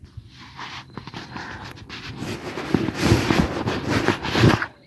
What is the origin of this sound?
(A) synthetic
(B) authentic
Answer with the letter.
A